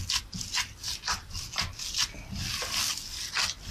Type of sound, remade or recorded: recorded